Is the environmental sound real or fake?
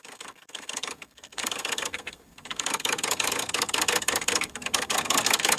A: fake